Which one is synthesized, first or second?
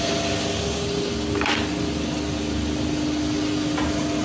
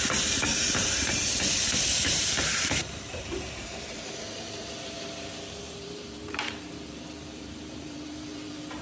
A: second